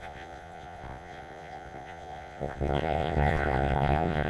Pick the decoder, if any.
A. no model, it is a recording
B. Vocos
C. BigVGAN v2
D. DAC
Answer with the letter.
B